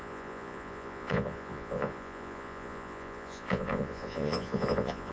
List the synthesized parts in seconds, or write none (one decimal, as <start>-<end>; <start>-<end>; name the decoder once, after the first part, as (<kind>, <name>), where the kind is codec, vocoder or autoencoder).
0.0-5.1 (vocoder, Vocos)